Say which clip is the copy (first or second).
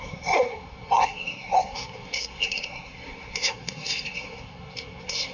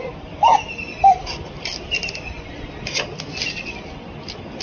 first